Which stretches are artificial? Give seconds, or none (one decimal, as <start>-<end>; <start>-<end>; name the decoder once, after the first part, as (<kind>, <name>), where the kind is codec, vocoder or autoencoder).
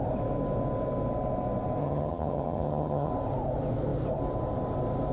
1.8-3.1 (vocoder, HiFi-GAN)